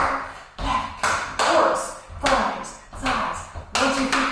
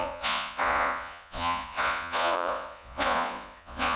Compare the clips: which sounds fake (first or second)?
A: second